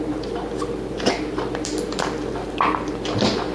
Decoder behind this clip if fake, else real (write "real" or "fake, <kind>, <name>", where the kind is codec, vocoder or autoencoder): fake, vocoder, BigVGAN v2